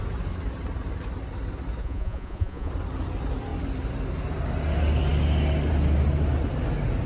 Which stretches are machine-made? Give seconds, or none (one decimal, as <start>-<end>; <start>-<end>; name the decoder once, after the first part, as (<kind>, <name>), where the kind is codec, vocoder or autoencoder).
1.8-2.7 (vocoder, Vocos)